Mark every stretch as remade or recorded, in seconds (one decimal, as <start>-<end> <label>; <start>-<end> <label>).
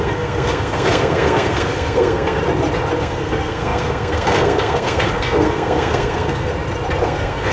0.0-2.4 remade; 2.4-3.0 recorded; 3.0-6.5 remade; 6.5-7.0 recorded; 7.0-7.5 remade